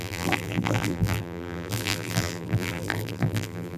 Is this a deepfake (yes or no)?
yes